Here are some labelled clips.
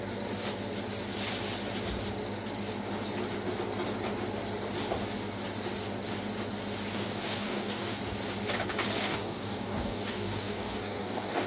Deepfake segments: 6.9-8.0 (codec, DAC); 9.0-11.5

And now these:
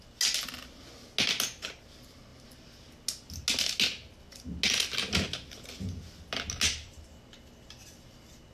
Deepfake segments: none

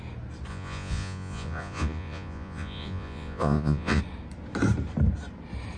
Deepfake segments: 0.5-4.0 (vocoder, Vocos)

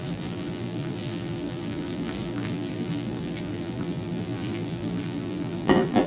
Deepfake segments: 0.0-6.1 (vocoder, BigVGAN v2)

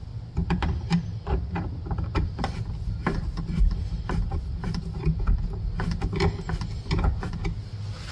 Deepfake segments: 0.4-2.6 (vocoder, BigVGAN v2); 3.0-5.2

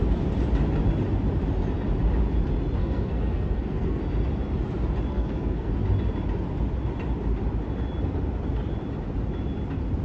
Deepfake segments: 2.8-4.0 (codec, SNAC); 5.1-5.7

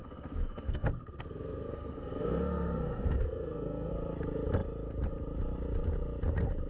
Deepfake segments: 0.0-3.9 (codec, SNAC)

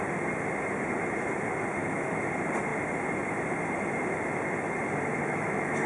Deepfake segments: 1.8-2.3 (autoencoder, DAC-VAE); 5.2-5.9